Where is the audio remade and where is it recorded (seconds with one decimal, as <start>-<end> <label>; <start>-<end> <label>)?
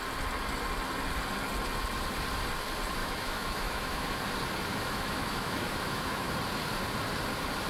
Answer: 0.0-3.0 recorded; 3.0-4.2 remade; 4.2-4.7 recorded; 4.7-6.3 remade; 6.3-7.7 recorded